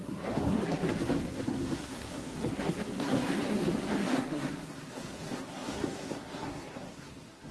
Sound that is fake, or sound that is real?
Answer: fake